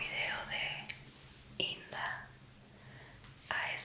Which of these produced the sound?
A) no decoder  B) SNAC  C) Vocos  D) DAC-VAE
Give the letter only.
A